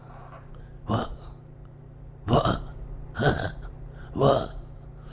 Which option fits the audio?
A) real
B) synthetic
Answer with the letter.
B